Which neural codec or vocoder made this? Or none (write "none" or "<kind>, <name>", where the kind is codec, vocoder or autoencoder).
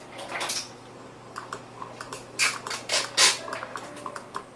none